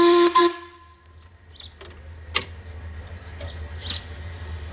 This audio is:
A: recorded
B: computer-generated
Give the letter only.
A